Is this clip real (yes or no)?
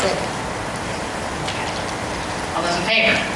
yes